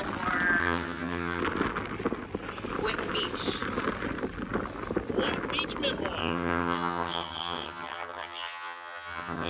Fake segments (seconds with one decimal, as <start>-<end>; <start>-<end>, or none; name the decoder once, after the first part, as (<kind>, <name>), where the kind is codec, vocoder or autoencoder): 0.6-1.4 (vocoder, HiFi-GAN); 6.2-9.5